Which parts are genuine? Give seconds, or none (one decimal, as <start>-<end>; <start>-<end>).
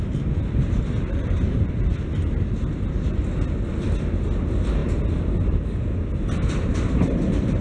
0.0-7.6